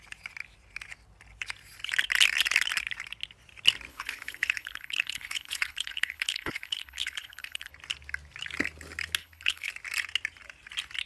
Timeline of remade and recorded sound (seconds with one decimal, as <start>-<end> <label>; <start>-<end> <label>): 0.0-3.9 recorded; 3.9-7.7 remade; 7.7-9.2 recorded; 9.2-9.7 remade; 9.7-11.1 recorded